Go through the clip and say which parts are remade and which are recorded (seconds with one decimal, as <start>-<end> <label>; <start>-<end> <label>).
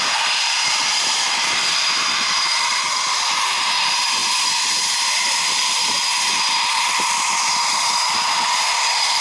0.0-9.2 remade